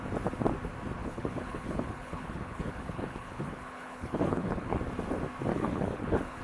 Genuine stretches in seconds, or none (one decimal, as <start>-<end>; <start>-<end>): 0.0-1.0; 4.8-5.5